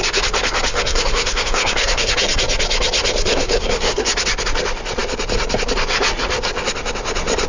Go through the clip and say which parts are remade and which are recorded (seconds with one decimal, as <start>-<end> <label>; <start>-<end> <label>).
0.0-0.7 recorded; 0.7-2.1 remade; 2.1-3.3 recorded; 3.3-4.1 remade; 4.1-7.5 recorded